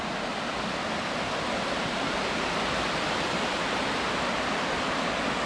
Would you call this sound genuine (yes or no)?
yes